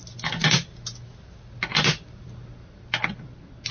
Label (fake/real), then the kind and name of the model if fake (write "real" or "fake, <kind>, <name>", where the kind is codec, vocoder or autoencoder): real